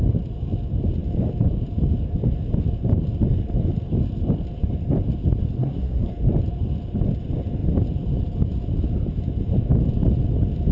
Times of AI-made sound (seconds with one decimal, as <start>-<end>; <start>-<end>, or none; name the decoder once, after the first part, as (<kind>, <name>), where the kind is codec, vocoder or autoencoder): 5.6-6.1 (codec, SNAC)